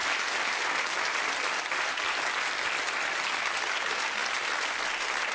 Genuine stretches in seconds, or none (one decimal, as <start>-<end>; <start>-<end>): 0.0-5.3